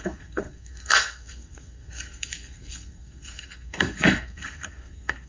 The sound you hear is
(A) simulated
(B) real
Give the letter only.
A